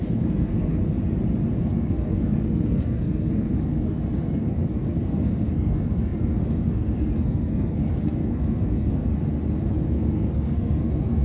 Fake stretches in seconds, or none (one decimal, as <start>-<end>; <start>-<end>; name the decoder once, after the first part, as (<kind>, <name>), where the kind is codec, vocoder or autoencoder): 0.0-0.8 (codec, SNAC); 1.6-9.1; 9.7-11.2